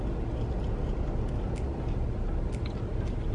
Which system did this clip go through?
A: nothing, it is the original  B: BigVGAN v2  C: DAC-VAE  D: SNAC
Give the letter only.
A